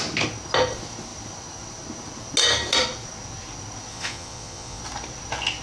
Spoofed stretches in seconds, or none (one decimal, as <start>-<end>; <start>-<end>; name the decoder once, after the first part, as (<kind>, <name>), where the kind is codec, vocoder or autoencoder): 3.9-4.8 (vocoder, Vocos)